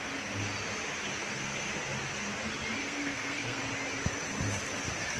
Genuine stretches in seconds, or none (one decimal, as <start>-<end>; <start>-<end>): 0.0-1.2; 1.7-2.8; 3.6-5.2